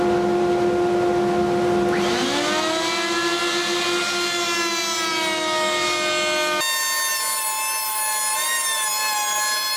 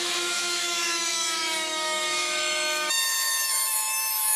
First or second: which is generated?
second